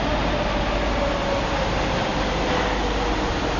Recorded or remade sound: recorded